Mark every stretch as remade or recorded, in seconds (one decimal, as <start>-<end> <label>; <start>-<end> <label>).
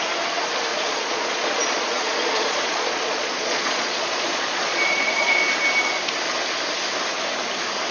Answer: 0.0-0.7 recorded; 0.7-5.4 remade; 5.4-7.9 recorded